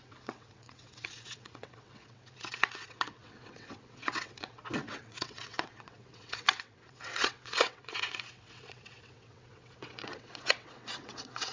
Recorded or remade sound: remade